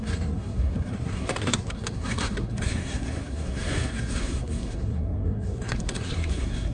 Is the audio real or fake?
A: fake